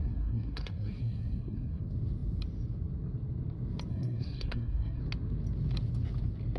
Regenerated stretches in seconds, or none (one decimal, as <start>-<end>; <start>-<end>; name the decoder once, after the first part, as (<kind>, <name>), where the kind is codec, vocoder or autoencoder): 0.0-1.8 (codec, SNAC); 3.9-5.0